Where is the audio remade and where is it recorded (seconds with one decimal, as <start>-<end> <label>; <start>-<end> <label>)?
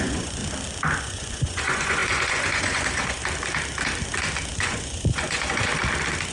0.0-0.4 remade; 0.4-1.0 recorded; 1.0-3.2 remade; 3.2-4.6 recorded; 4.6-5.7 remade; 5.7-6.3 recorded